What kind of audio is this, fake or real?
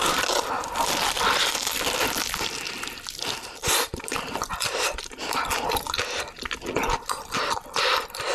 real